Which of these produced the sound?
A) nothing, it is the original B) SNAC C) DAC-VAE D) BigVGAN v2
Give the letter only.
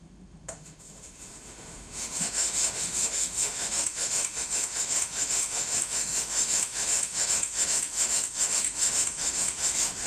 C